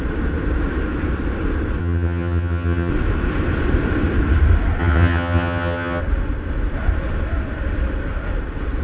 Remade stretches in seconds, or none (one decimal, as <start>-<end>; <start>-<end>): 1.8-2.9; 4.8-6.0